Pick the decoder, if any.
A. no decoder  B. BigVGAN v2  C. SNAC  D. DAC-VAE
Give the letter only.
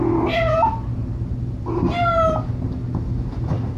A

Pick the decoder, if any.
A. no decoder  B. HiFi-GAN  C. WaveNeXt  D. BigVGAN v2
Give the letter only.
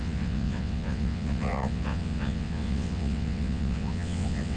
C